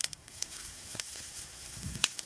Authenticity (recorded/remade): remade